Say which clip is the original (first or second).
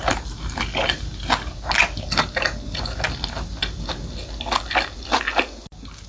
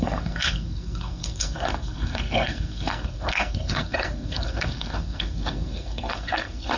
first